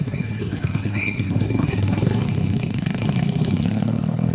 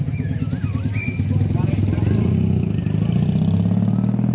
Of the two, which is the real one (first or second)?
second